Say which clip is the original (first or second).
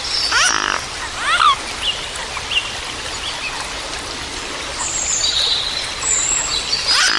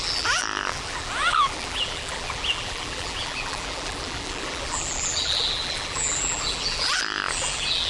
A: first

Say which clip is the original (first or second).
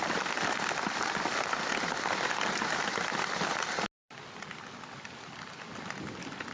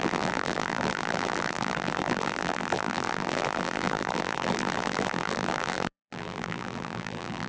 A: first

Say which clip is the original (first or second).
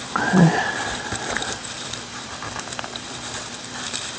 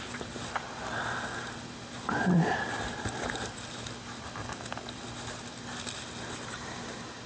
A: second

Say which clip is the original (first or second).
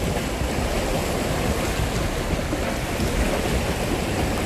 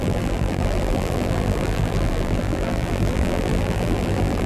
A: first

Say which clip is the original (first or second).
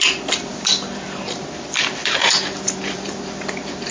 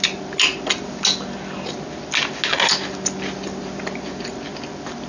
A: second